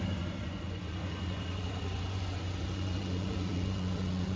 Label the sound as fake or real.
fake